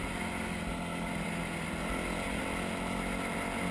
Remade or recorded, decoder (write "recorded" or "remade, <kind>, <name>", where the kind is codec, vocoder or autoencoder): recorded